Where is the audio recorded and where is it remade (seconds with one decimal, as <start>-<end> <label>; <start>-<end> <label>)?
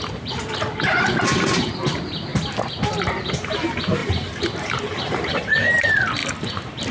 0.0-4.0 recorded; 4.0-5.5 remade; 5.5-6.9 recorded